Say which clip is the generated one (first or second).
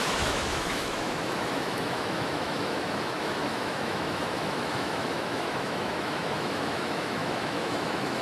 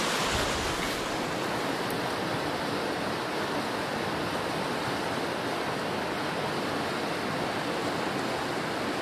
first